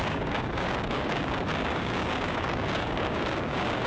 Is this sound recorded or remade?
remade